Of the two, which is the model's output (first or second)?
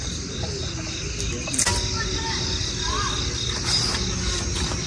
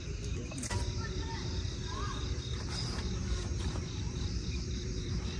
second